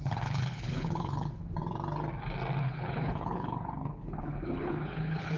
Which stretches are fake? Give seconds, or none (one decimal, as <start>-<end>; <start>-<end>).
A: 0.0-1.4; 2.6-5.4